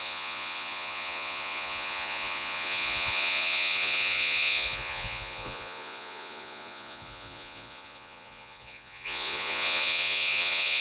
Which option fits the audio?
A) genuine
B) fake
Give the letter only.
B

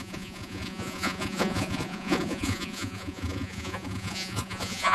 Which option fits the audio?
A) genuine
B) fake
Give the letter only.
B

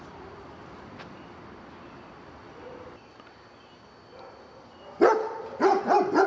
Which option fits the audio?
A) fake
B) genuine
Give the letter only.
B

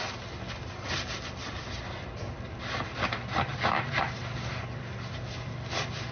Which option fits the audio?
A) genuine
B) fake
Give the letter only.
A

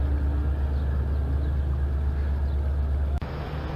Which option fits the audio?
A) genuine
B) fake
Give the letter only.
A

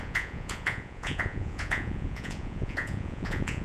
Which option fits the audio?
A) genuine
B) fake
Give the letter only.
B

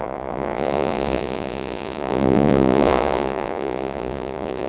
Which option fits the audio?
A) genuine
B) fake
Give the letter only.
B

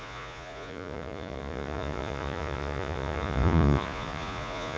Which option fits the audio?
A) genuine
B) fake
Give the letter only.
B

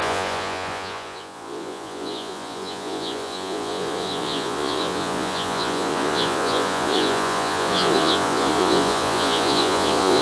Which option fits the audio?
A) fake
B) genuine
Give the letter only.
A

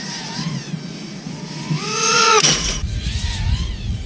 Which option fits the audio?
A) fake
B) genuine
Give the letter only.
A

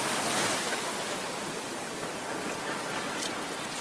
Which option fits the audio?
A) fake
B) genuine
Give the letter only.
B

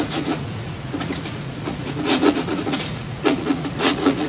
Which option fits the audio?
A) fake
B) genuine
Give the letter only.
A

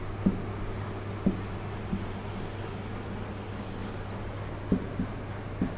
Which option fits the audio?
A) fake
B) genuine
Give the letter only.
B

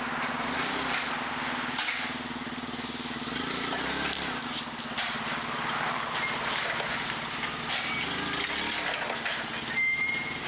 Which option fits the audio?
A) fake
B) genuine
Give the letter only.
B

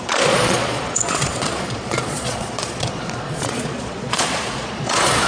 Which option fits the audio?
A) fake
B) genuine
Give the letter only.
A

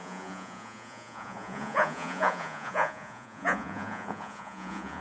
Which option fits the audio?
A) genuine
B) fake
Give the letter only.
B